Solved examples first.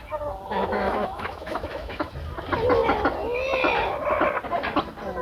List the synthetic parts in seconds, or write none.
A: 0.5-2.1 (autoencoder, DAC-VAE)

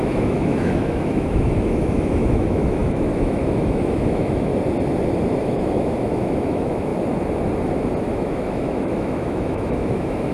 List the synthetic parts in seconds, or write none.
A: 0.0-4.5 (autoencoder, DAC-VAE); 5.4-6.9; 8.0-10.3